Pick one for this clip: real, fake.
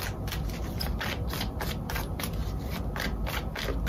real